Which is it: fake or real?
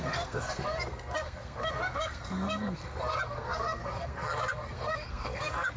fake